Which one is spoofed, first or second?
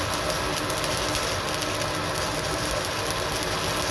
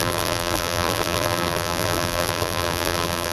second